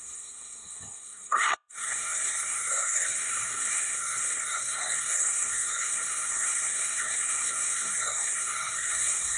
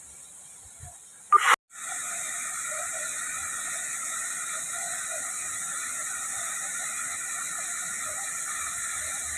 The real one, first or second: second